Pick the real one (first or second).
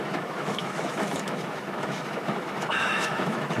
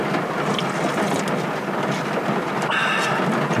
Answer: second